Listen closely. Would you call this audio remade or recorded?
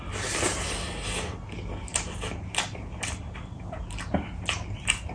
recorded